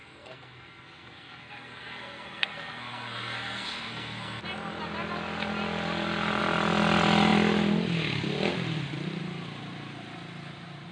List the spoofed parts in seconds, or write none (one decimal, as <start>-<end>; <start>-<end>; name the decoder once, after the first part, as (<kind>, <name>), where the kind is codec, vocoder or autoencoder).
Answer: 0.0-4.4 (codec, SNAC)